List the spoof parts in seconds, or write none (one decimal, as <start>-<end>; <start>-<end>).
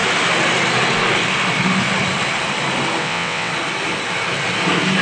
3.0-3.5